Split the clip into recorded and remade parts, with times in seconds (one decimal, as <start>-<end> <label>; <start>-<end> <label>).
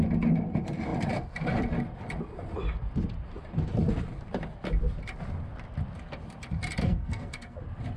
0.0-6.8 recorded; 6.8-7.6 remade; 7.6-8.0 recorded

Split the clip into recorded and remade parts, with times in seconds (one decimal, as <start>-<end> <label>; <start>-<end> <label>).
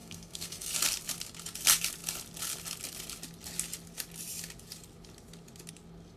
0.0-0.7 remade; 0.7-6.2 recorded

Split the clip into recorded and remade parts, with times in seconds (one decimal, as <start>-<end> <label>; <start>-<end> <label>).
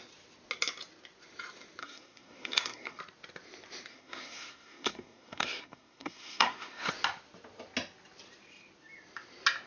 0.0-1.8 recorded; 1.8-3.0 remade; 3.0-3.9 recorded; 3.9-6.9 remade; 6.9-9.7 recorded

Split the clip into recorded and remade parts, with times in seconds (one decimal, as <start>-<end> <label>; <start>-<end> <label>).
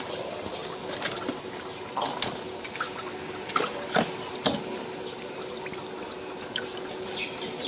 0.0-7.7 recorded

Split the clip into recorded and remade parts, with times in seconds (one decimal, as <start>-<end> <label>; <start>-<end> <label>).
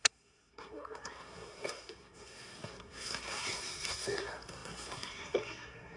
0.0-6.0 remade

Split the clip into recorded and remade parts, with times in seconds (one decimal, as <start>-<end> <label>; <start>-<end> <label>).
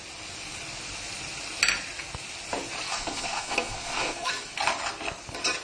0.0-2.9 recorded; 2.9-4.3 remade; 4.3-5.6 recorded